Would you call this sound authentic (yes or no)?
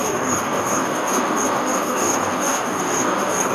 no